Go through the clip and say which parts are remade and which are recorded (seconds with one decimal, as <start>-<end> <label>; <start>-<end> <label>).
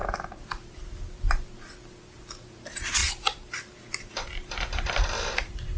0.0-5.8 recorded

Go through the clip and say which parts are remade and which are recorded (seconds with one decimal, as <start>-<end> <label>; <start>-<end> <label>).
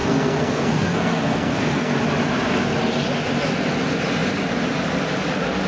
0.0-2.0 remade; 2.0-5.7 recorded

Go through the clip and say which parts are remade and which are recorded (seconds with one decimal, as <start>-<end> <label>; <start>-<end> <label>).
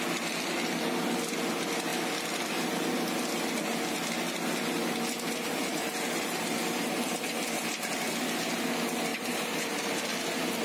0.0-5.6 recorded; 5.6-7.4 remade; 7.4-9.1 recorded; 9.1-10.0 remade; 10.0-10.6 recorded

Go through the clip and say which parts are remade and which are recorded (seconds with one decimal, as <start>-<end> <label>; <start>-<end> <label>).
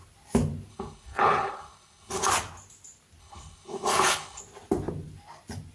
0.0-0.7 recorded; 0.7-2.3 remade; 2.3-3.2 recorded; 3.2-4.4 remade; 4.4-5.7 recorded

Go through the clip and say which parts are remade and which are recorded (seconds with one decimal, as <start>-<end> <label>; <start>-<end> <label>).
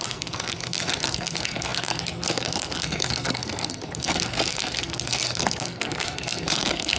0.0-7.0 remade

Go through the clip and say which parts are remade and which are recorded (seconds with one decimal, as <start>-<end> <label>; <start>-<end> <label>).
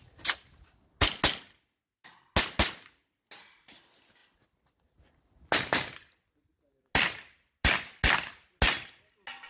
0.0-9.5 recorded